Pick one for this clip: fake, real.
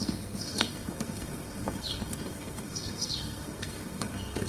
fake